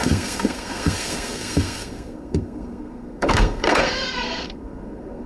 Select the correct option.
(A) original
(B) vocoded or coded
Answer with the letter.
B